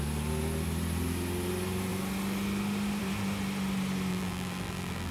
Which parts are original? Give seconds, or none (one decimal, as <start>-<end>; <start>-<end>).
0.0-4.1